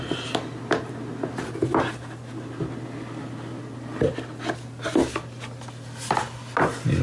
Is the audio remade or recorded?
recorded